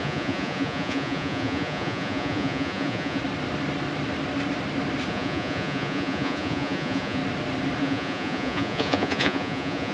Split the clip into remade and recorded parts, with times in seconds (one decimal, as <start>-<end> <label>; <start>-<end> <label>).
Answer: 0.0-3.2 remade; 3.2-5.1 recorded; 5.1-7.2 remade; 7.2-7.8 recorded; 7.8-9.9 remade